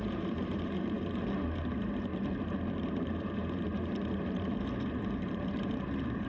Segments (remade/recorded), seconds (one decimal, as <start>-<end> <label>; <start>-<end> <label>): 0.0-2.1 remade; 2.1-2.7 recorded; 2.7-6.3 remade